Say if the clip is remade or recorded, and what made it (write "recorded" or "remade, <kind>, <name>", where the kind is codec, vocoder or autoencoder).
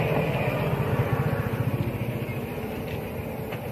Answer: recorded